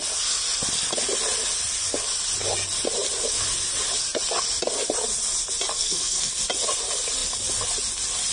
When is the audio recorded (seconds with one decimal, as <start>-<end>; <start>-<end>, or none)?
0.0-5.8; 6.3-8.3